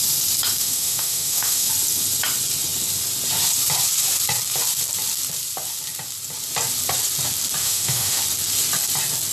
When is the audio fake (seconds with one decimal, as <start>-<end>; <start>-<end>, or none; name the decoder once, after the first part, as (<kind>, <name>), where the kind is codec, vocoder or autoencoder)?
0.6-1.7 (autoencoder, DAC-VAE); 7.6-8.2